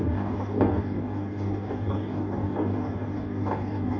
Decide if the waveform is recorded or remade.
remade